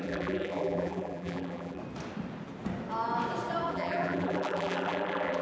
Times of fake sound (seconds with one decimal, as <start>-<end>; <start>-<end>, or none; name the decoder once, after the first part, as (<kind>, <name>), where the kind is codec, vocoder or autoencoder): 0.0-1.8 (vocoder, BigVGAN v2); 3.7-5.4